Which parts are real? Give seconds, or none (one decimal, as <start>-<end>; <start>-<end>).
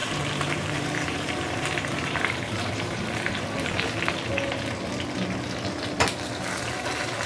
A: 3.7-7.3